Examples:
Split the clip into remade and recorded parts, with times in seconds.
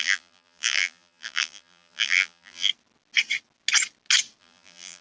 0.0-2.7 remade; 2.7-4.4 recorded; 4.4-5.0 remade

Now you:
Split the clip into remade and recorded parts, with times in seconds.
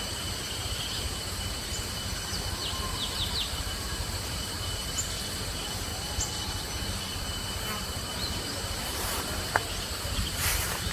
0.0-5.9 remade; 5.9-6.4 recorded; 6.4-10.9 remade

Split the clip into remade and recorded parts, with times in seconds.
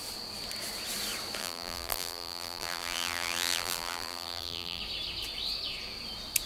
0.0-1.4 recorded; 1.4-4.8 remade; 4.8-6.5 recorded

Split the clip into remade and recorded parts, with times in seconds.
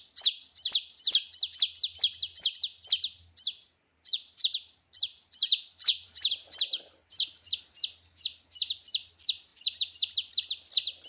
0.0-3.9 recorded; 3.9-7.6 remade; 7.6-9.5 recorded; 9.5-10.3 remade; 10.3-11.1 recorded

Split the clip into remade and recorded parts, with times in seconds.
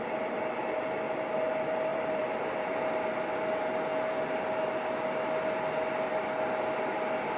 0.0-1.9 recorded; 1.9-2.9 remade; 2.9-7.4 recorded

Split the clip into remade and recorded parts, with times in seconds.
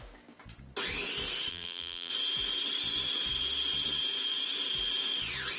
0.0-1.5 recorded; 1.5-2.1 remade; 2.1-5.6 recorded